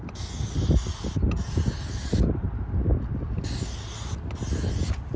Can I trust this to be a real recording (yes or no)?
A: yes